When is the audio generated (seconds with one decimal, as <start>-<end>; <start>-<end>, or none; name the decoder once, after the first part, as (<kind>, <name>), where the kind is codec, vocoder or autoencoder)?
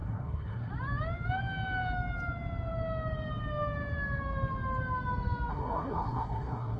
0.0-0.7 (codec, SNAC); 5.5-6.8